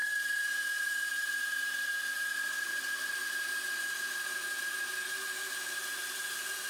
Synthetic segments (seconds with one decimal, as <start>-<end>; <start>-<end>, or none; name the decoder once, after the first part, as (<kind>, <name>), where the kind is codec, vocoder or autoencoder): none